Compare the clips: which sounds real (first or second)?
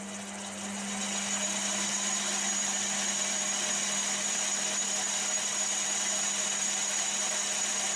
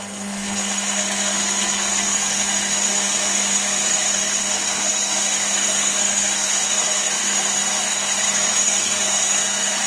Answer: first